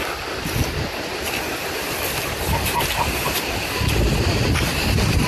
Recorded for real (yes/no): yes